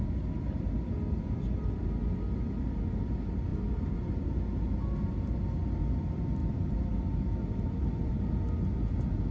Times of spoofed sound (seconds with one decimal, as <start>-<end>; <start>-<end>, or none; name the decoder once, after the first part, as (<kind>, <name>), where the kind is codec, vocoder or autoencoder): none